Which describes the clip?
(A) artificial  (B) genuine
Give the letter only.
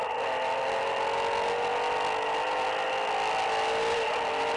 B